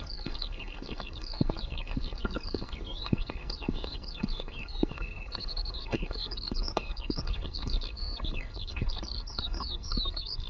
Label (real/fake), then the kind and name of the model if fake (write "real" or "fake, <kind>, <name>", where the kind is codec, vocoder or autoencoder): fake, codec, SNAC